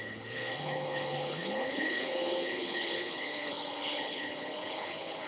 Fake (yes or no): yes